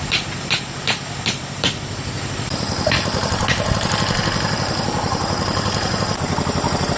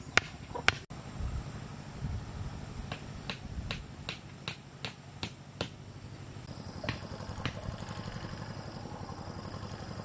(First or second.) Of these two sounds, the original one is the second